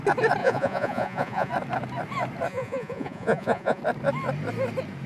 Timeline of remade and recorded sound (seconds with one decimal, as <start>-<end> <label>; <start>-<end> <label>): 0.0-0.4 recorded; 0.4-1.5 remade; 1.5-2.5 recorded; 2.5-3.8 remade; 3.8-5.1 recorded